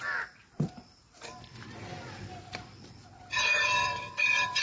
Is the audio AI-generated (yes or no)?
yes